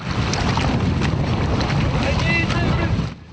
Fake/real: real